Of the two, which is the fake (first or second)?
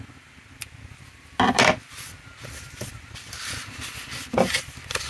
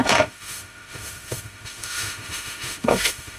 second